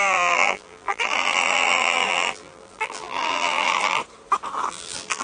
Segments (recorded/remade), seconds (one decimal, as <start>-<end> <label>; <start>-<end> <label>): 0.0-4.0 remade; 4.0-4.7 recorded; 4.7-5.2 remade